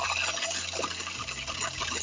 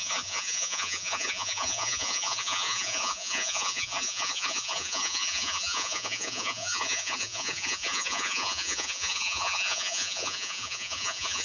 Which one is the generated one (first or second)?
second